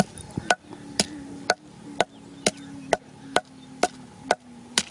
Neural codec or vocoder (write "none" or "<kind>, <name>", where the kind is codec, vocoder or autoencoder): none